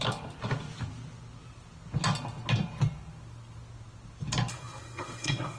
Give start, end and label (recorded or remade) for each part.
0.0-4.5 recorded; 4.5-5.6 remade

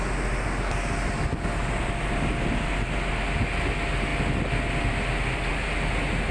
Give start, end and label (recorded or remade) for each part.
0.0-6.3 recorded